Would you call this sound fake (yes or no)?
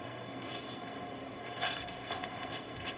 yes